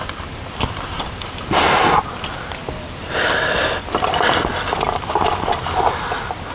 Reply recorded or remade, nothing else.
recorded